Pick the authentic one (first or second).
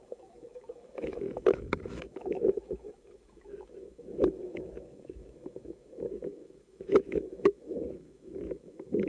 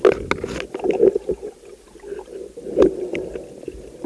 second